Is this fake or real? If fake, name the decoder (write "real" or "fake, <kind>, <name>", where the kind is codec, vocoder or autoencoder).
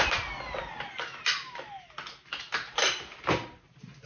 real